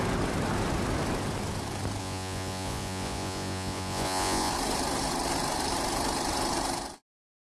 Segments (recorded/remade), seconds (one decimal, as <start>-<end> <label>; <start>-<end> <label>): 0.0-2.0 recorded; 2.0-4.5 remade; 4.5-7.4 recorded